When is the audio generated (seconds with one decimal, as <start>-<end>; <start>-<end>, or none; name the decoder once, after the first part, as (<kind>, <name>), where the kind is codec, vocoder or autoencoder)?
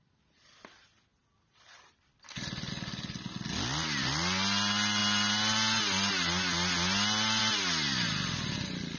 none